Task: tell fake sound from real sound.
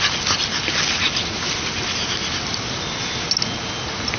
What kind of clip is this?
real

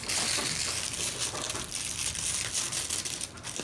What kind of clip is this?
real